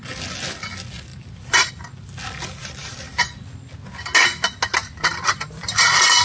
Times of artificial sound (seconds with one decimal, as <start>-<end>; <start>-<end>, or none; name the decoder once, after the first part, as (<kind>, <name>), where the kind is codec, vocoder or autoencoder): 1.1-1.7 (vocoder, BigVGAN v2); 2.6-3.5; 4.8-6.2